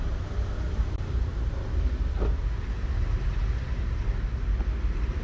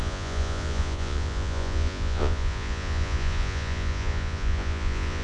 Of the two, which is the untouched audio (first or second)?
first